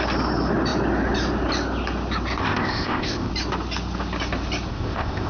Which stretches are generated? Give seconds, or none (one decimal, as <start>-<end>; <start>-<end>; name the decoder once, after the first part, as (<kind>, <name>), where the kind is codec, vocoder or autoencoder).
2.4-3.3 (codec, ZipCodec); 4.7-5.3